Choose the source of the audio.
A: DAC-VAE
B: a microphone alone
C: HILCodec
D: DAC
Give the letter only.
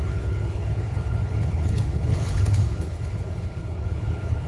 C